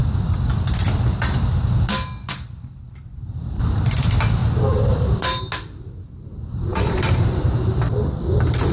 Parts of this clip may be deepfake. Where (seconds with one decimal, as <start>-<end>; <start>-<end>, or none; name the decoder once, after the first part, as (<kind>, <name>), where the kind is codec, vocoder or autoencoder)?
0.0-3.9 (vocoder, BigVGAN v2); 4.4-5.4